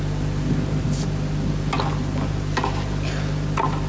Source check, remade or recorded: recorded